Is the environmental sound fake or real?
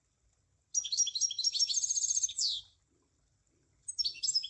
real